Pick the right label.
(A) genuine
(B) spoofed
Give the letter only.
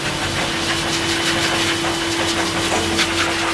A